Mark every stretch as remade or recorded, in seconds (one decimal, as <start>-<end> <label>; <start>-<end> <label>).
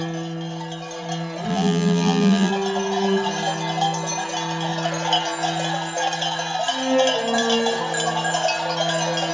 0.0-1.5 recorded; 1.5-2.5 remade; 2.5-9.3 recorded